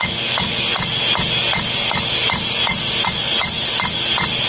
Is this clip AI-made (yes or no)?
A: no